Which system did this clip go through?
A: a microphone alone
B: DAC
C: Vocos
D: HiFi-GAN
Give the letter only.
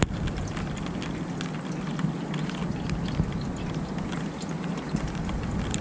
A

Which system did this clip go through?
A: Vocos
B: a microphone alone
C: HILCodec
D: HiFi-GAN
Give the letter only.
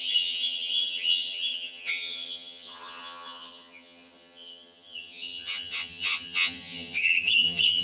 D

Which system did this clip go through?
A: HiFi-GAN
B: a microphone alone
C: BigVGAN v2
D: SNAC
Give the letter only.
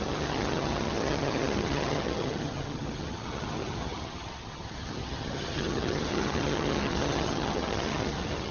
A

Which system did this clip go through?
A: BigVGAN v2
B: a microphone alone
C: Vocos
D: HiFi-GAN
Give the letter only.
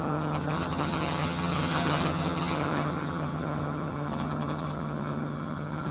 D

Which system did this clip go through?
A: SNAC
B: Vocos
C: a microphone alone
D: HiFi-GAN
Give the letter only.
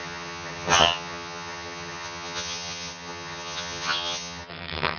D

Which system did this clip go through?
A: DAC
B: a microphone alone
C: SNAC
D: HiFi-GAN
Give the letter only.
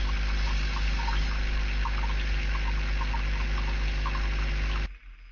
B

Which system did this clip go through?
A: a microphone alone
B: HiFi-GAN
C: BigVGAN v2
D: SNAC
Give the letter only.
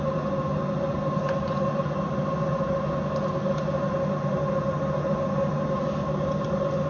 A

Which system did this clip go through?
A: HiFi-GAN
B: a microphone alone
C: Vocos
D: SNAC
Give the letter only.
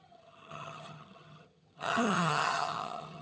A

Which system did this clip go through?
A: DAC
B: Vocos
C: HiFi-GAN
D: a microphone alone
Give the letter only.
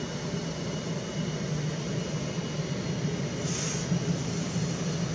D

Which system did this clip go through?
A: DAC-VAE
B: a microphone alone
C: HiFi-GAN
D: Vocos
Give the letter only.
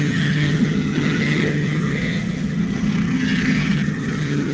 C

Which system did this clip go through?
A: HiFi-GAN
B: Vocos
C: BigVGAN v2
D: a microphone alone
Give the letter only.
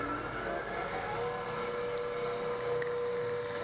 D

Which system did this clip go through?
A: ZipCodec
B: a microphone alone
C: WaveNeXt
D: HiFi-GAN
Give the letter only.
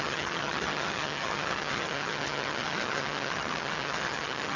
D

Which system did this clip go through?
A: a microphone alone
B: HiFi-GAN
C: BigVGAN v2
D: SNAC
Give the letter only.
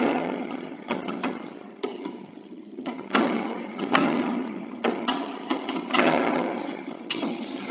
B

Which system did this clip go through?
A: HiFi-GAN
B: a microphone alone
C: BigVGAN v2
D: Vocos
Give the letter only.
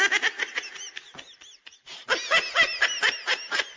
B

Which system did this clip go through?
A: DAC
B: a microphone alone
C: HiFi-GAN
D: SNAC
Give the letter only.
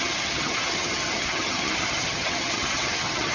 C